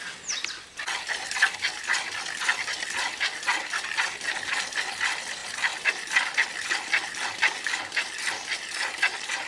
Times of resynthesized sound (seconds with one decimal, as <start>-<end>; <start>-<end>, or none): none